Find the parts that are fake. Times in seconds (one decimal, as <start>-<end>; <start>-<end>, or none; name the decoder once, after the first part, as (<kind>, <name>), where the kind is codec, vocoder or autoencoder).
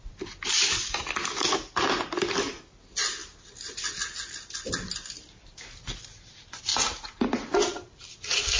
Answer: none